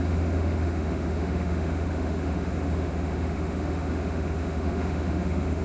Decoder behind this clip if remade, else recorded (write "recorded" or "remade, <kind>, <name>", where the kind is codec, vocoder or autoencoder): remade, autoencoder, DAC-VAE